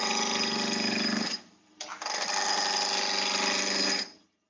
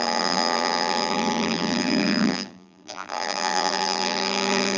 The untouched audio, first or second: first